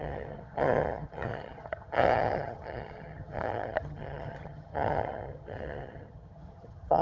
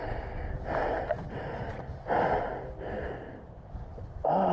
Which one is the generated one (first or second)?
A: first